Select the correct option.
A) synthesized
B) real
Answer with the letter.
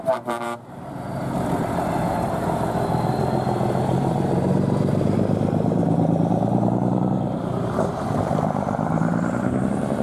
A